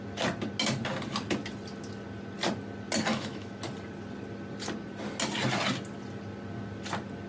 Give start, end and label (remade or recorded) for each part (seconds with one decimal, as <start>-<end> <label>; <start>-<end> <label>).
0.0-3.1 recorded; 3.1-3.6 remade; 3.6-7.3 recorded